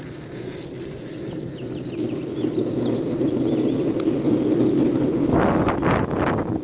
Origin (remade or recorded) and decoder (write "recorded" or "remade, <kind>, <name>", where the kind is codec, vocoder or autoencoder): recorded